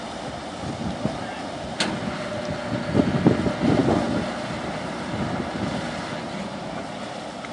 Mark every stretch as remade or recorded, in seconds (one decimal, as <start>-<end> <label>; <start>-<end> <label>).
0.0-7.5 recorded

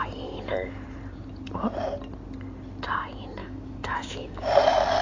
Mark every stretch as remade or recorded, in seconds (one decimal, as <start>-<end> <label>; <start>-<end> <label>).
0.0-3.4 recorded; 3.4-4.5 remade; 4.5-5.0 recorded

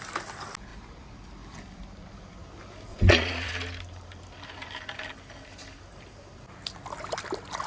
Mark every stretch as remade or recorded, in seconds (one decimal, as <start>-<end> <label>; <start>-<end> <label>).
0.0-2.9 recorded; 2.9-3.5 remade; 3.5-7.7 recorded

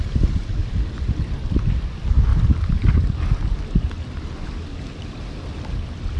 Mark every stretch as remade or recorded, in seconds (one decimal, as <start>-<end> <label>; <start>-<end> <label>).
0.0-6.2 recorded

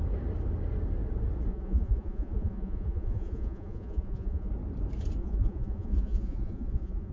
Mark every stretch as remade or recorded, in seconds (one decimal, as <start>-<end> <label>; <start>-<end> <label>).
0.0-1.5 recorded; 1.5-4.5 remade; 4.5-5.2 recorded; 5.2-7.1 remade

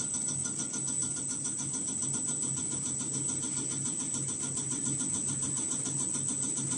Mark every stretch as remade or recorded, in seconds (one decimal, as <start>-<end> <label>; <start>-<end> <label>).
0.0-6.8 recorded

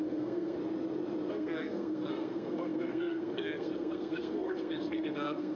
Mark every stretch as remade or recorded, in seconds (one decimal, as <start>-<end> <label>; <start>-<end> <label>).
0.0-0.6 remade; 0.6-1.3 recorded; 1.3-5.6 remade

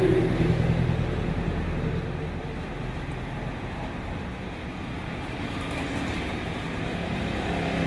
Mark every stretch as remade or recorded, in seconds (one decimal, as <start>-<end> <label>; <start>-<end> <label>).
0.0-5.9 recorded; 5.9-7.5 remade; 7.5-7.9 recorded